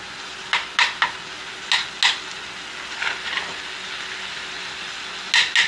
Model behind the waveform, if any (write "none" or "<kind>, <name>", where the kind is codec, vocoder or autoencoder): none